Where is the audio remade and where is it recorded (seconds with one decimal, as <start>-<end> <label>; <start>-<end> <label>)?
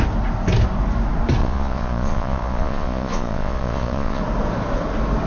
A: 0.0-1.4 recorded; 1.4-4.2 remade; 4.2-5.3 recorded